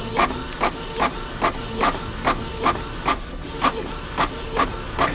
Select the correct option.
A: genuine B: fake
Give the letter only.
A